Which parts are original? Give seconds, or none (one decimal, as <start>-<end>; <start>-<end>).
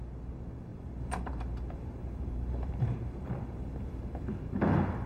0.0-0.7; 3.8-5.1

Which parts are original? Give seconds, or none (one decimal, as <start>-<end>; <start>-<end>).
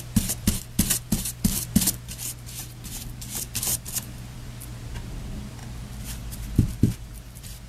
none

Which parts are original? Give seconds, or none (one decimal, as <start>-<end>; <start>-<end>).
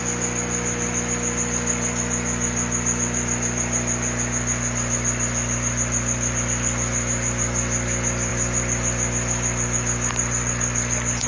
0.0-8.3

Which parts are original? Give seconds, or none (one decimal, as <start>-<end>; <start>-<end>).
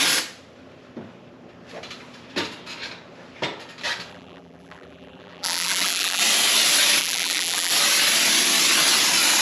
0.0-4.1; 6.2-7.0; 7.7-9.4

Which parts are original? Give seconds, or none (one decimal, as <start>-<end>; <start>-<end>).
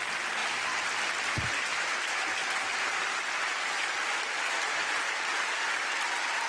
0.0-6.5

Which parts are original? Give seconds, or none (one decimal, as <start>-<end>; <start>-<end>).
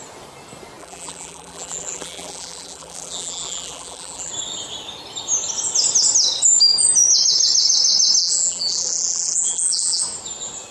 0.0-0.8; 4.3-8.2; 10.0-10.7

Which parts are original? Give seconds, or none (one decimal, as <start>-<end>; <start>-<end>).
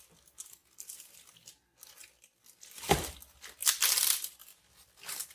0.6-3.0; 4.5-5.3